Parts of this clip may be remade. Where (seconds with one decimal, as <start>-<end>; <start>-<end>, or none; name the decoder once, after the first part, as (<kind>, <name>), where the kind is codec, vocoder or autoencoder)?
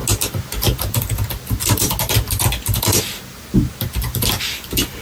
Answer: none